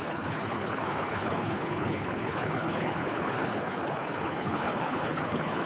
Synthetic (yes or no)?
yes